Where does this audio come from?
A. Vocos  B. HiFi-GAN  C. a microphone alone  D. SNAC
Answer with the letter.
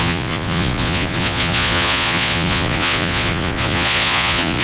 A